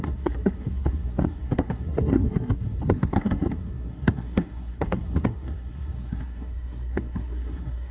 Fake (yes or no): yes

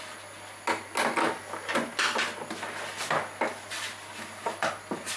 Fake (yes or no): no